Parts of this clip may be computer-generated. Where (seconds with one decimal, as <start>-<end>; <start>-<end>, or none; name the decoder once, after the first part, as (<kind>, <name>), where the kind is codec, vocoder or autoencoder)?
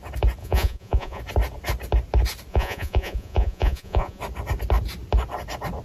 0.4-1.2 (vocoder, Vocos); 2.5-4.2